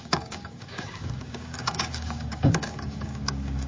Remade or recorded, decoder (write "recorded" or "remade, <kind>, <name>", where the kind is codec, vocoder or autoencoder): remade, codec, DAC